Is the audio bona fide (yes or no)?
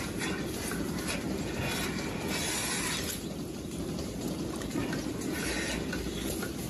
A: yes